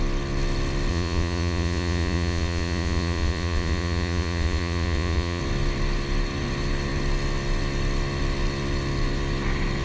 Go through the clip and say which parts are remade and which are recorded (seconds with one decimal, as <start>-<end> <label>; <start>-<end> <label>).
0.0-0.9 recorded; 0.9-5.4 remade; 5.4-9.8 recorded